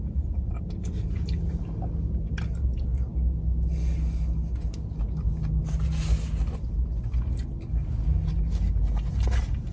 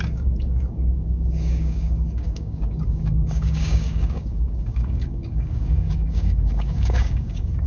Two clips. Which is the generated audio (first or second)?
second